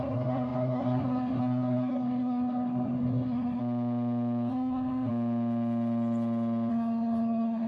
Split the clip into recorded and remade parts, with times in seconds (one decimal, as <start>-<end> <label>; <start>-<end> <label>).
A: 0.0-3.6 remade; 3.6-4.5 recorded; 4.5-5.1 remade; 5.1-6.7 recorded; 6.7-7.7 remade

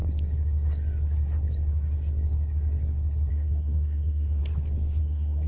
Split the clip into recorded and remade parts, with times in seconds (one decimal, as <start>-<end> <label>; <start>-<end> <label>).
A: 0.0-3.3 recorded; 3.3-4.4 remade; 4.4-5.0 recorded; 5.0-5.5 remade